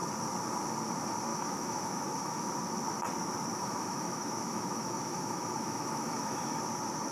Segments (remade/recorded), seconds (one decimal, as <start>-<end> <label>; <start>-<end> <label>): 0.0-1.3 recorded; 1.3-2.5 remade; 2.5-3.5 recorded; 3.5-6.6 remade; 6.6-7.1 recorded